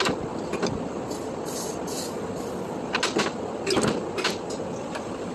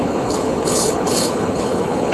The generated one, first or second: second